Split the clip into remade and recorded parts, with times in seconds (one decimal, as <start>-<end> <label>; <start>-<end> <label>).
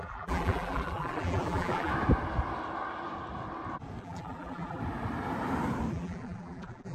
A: 0.0-1.9 remade; 1.9-4.0 recorded; 4.0-4.8 remade; 4.8-5.9 recorded; 5.9-6.9 remade